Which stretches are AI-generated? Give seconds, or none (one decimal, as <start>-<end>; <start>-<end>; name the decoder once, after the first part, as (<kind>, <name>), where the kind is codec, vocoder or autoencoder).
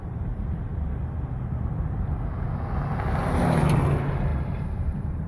4.3-5.3 (vocoder, BigVGAN v2)